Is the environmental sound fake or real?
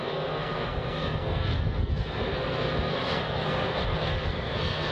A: fake